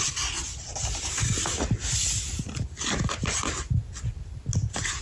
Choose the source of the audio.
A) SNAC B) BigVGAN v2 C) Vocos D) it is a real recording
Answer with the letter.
D